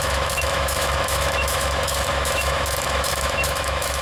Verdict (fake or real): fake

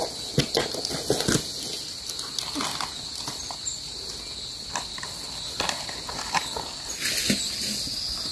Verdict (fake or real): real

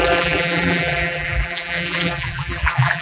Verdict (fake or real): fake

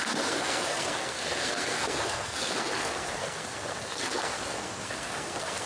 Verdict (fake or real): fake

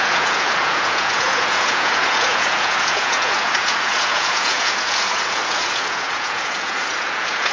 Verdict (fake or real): fake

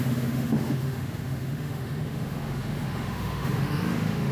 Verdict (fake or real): fake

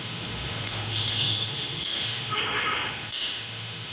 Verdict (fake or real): fake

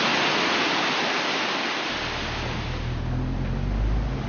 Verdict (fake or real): real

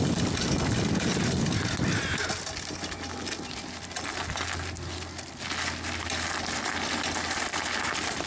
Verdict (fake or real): real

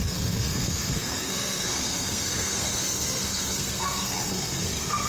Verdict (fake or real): fake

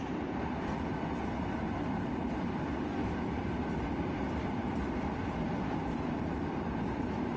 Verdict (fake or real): real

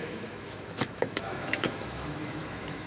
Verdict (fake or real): fake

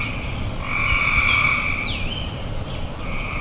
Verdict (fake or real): real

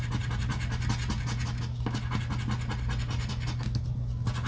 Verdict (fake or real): real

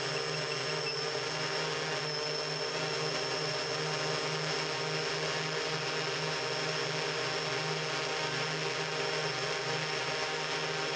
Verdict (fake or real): real